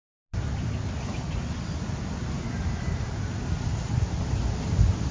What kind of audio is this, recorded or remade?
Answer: recorded